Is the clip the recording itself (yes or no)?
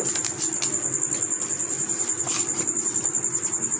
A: yes